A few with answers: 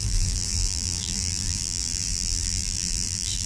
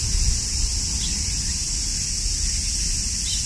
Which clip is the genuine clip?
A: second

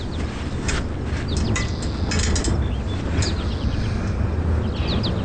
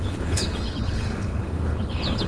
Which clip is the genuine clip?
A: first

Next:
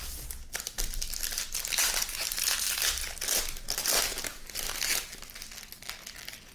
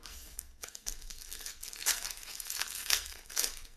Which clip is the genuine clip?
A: first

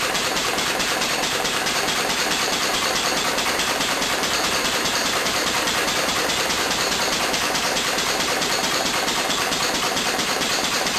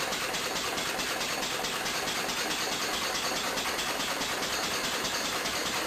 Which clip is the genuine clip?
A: second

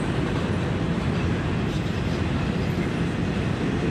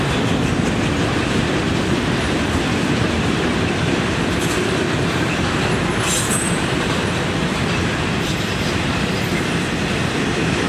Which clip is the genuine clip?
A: first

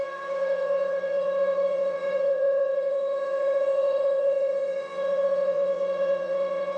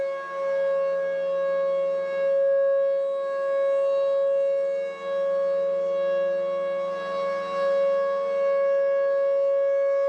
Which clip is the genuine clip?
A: second